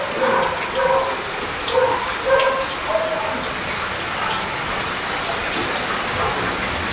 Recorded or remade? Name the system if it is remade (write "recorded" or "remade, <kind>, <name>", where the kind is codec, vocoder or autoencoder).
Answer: recorded